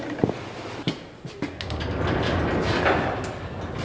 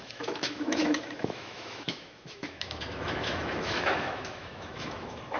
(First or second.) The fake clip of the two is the second